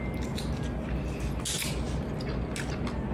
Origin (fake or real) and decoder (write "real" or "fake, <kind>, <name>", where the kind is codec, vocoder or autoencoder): real